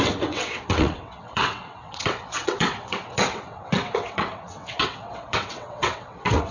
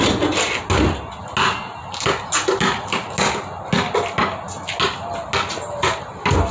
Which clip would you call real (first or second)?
second